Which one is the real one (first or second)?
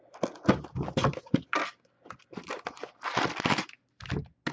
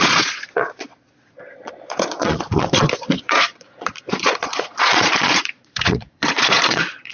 first